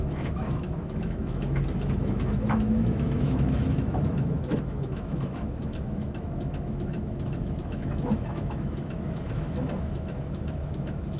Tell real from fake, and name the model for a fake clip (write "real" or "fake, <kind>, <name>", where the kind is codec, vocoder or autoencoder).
fake, autoencoder, DAC-VAE